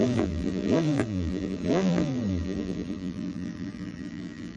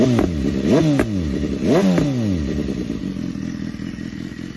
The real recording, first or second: second